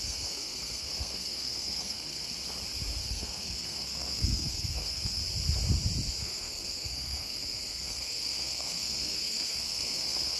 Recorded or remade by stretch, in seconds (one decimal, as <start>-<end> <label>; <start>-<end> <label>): 0.0-2.3 remade; 2.3-3.0 recorded; 3.0-5.2 remade; 5.2-6.2 recorded; 6.2-10.4 remade